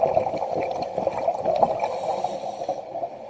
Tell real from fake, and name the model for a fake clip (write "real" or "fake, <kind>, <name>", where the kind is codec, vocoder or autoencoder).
real